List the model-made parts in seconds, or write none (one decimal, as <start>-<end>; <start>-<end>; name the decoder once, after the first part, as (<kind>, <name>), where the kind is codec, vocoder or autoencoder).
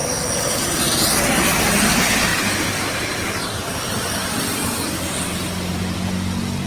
2.3-3.8 (vocoder, BigVGAN v2)